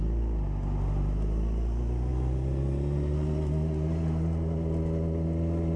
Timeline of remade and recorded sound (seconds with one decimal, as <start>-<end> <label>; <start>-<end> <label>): 0.0-5.8 recorded